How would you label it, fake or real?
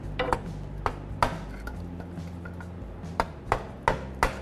real